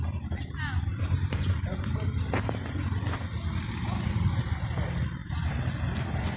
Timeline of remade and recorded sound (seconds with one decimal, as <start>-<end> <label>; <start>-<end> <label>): 0.0-0.9 recorded; 0.9-3.0 remade; 3.0-5.2 recorded; 5.2-5.8 remade; 5.8-6.4 recorded